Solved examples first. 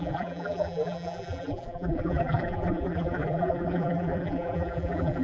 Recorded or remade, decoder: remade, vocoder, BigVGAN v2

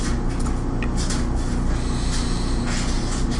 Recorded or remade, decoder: recorded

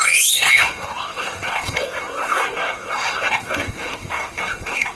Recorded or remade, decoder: remade, codec, SNAC